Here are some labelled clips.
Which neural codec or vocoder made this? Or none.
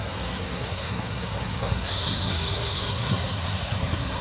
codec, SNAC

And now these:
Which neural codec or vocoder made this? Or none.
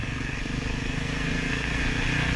codec, SNAC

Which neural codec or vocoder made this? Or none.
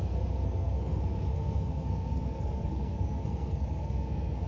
codec, SNAC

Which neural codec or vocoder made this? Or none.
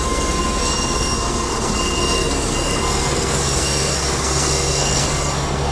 codec, SNAC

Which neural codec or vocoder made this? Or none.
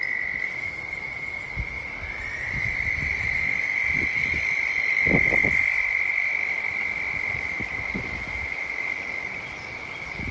none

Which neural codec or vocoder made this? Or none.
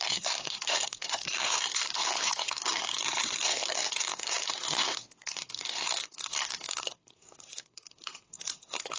codec, SNAC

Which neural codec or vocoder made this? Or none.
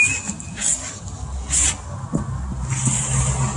none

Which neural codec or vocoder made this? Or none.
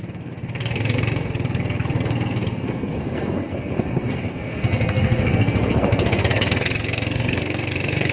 codec, SNAC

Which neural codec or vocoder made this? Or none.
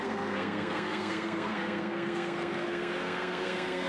codec, SNAC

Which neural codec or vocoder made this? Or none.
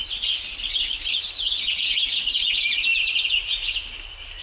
none